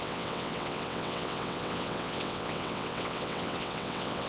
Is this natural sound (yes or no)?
no